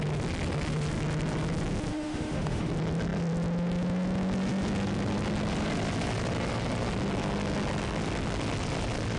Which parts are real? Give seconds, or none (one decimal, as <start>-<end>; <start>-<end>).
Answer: 0.0-1.9; 2.7-9.2